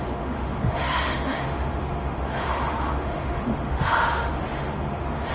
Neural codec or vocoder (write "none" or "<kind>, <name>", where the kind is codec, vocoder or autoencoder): autoencoder, DAC-VAE